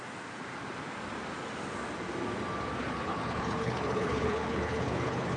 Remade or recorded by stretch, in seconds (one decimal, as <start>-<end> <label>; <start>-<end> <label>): 0.0-2.8 recorded; 2.8-5.4 remade